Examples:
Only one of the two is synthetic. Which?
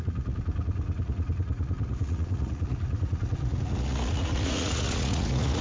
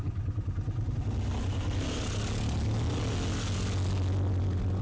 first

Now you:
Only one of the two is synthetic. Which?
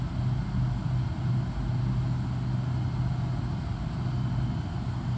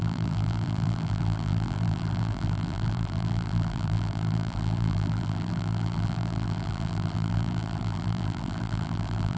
second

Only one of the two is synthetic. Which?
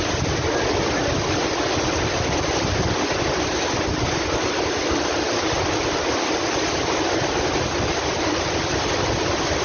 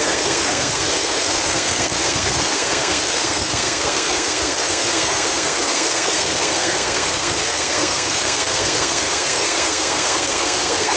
second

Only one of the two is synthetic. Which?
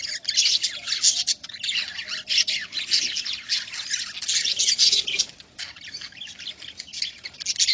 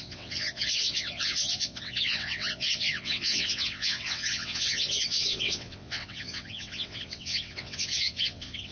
second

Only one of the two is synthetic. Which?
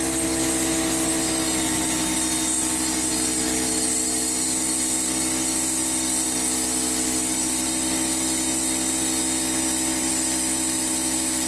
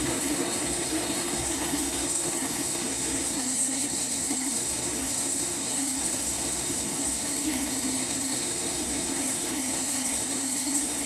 second